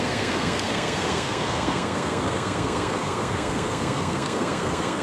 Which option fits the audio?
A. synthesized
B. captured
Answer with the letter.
A